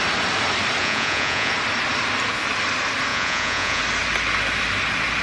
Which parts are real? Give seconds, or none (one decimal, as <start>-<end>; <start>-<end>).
0.0-0.8; 1.5-3.1; 3.8-5.2